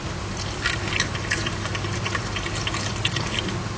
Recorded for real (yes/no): yes